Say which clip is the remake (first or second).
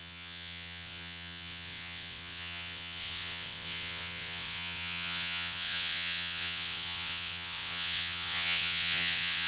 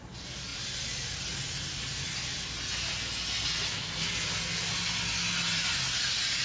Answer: first